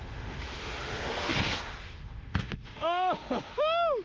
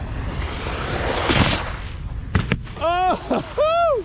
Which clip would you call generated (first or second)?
first